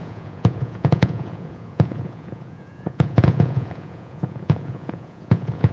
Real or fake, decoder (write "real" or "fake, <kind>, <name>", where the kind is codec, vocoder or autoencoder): fake, vocoder, Vocos